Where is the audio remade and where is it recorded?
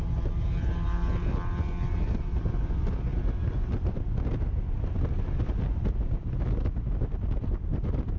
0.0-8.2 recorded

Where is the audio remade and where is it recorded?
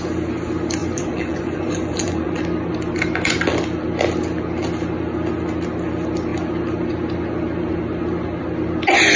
0.0-0.8 recorded; 0.8-2.4 remade; 2.4-9.2 recorded